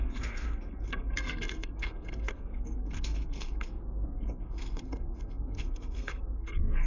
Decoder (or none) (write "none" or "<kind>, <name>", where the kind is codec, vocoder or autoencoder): codec, SNAC